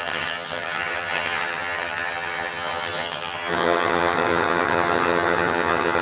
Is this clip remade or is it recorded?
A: remade